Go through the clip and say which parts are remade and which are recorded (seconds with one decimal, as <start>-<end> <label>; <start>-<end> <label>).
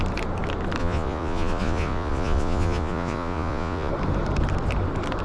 0.0-0.8 recorded; 0.8-3.9 remade; 3.9-5.2 recorded